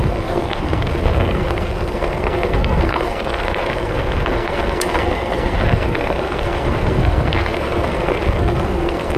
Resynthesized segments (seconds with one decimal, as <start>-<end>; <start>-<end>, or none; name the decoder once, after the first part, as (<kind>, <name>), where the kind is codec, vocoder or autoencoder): 0.0-9.2 (codec, SNAC)